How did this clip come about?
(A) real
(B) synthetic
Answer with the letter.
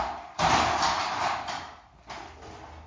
A